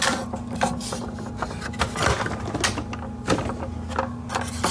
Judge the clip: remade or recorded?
recorded